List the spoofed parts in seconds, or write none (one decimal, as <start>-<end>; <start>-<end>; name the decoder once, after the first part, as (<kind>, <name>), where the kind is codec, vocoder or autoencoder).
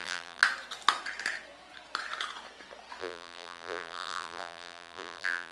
0.0-0.4 (vocoder, BigVGAN v2); 3.0-5.5